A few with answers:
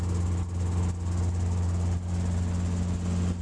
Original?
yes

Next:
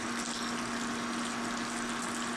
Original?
yes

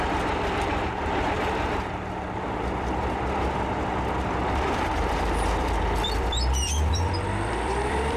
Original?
no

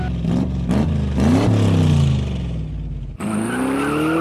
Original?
yes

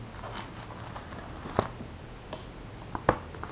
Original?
yes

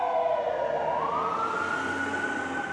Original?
yes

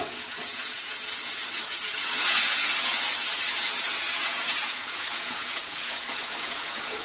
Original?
no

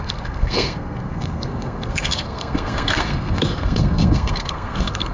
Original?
no